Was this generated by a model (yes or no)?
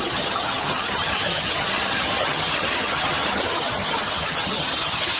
yes